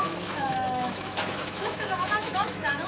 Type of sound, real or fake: fake